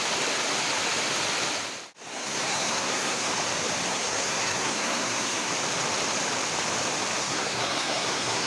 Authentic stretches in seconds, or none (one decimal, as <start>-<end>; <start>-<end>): 0.0-2.1; 3.3-3.9; 5.5-7.2